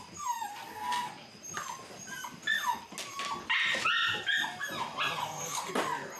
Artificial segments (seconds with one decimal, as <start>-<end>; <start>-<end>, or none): 0.5-1.1; 5.2-5.7